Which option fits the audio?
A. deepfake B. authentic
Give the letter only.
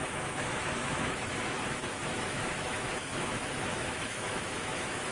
A